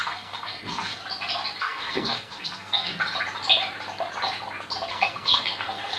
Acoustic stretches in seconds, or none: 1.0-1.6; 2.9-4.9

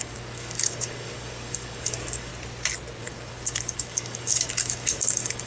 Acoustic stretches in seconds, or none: 2.3-3.0